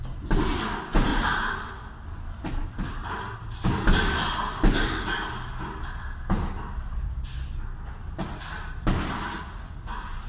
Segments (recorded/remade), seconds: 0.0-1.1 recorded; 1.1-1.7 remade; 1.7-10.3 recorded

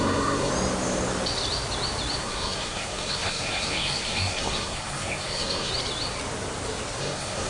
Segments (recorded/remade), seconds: 0.0-0.5 remade; 0.5-2.2 recorded; 2.2-5.7 remade; 5.7-7.0 recorded; 7.0-7.5 remade

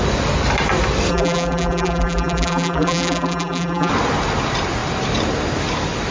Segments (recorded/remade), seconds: 0.0-1.1 recorded; 1.1-3.9 remade; 3.9-6.1 recorded

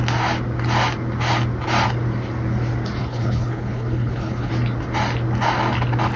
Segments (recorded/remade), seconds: 0.0-3.0 recorded; 3.0-4.5 remade; 4.5-6.2 recorded

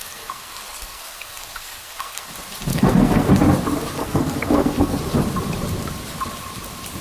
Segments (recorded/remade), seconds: 0.0-2.3 remade; 2.3-2.7 recorded; 2.7-3.3 remade; 3.3-4.0 recorded; 4.0-5.0 remade; 5.0-7.0 recorded